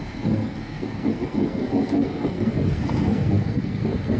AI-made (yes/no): yes